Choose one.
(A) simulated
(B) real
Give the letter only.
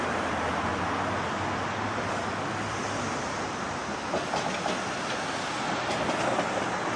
B